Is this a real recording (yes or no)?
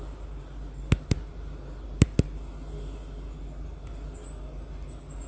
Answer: yes